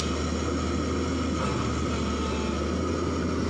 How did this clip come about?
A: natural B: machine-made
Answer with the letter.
A